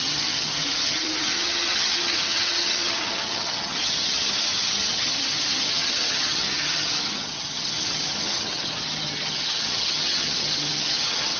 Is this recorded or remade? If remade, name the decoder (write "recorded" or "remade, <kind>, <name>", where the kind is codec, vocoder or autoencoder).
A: remade, vocoder, HiFi-GAN